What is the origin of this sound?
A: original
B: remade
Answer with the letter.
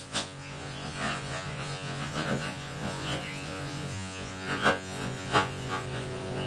B